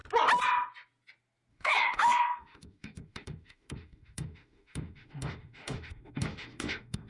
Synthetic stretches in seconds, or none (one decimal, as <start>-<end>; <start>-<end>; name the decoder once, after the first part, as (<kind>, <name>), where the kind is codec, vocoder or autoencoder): 1.5-7.1 (autoencoder, DAC-VAE)